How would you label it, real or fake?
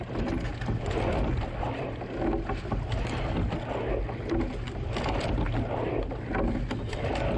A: real